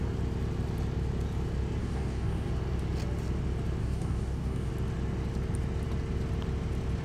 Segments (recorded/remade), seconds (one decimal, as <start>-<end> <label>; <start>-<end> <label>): 0.0-1.8 recorded; 1.8-2.5 remade; 2.5-3.8 recorded; 3.8-4.7 remade; 4.7-7.0 recorded